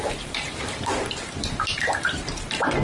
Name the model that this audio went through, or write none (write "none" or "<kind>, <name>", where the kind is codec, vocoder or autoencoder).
vocoder, BigVGAN v2